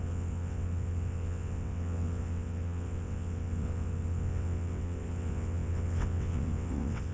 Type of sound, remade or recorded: remade